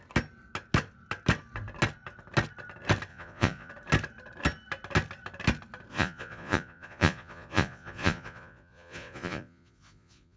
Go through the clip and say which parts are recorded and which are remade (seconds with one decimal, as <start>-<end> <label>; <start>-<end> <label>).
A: 0.0-3.1 recorded; 3.1-3.7 remade; 3.7-5.9 recorded; 5.9-10.4 remade